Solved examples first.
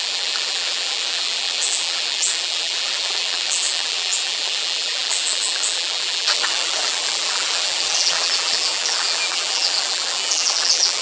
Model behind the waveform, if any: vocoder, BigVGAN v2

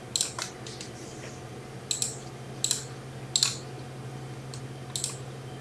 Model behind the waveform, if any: none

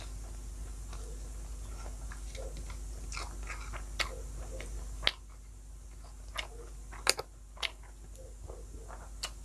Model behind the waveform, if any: none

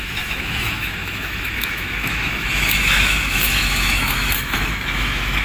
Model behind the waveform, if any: autoencoder, DAC-VAE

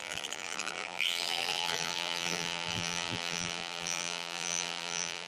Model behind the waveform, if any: vocoder, BigVGAN v2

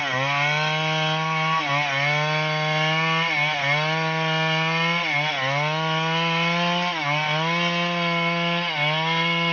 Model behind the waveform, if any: none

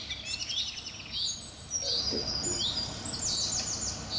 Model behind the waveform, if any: none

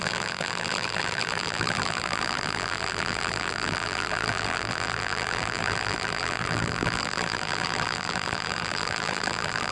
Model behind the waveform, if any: vocoder, BigVGAN v2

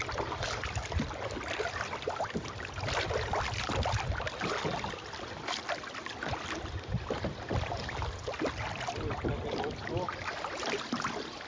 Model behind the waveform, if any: none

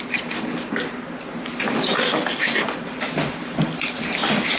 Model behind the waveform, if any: vocoder, BigVGAN v2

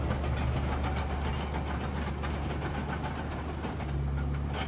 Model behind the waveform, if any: none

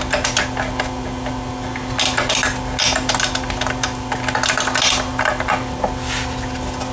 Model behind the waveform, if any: none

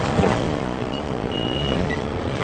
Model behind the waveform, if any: vocoder, Vocos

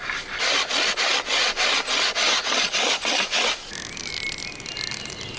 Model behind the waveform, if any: none